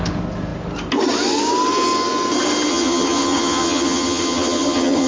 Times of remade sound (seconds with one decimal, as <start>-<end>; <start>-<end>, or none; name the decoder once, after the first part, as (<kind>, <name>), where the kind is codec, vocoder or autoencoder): 2.7-5.1 (vocoder, HiFi-GAN)